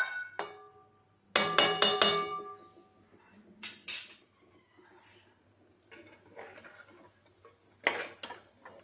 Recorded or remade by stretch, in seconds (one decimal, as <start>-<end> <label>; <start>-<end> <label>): 0.0-8.8 recorded